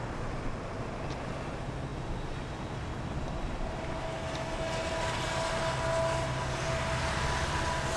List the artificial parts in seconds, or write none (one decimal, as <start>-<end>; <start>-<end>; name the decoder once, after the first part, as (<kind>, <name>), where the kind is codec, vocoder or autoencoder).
none